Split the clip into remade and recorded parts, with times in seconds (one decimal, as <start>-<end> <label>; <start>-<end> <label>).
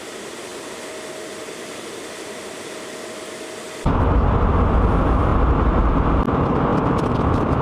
0.0-6.7 recorded; 6.7-7.6 remade